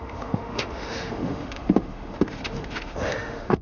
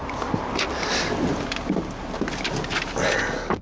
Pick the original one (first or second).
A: second